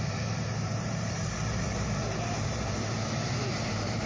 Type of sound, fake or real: fake